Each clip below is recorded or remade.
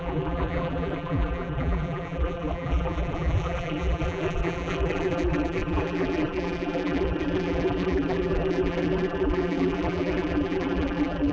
remade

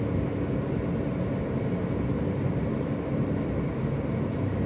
recorded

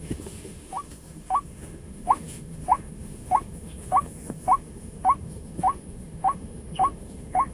remade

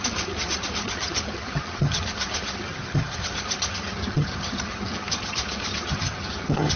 remade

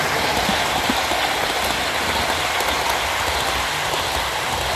recorded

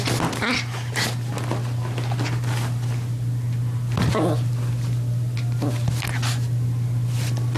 recorded